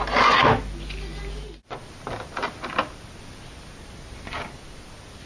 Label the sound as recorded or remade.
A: recorded